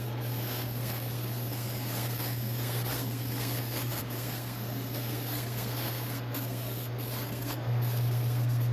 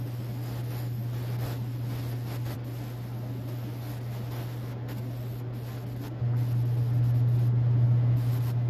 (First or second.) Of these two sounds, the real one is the second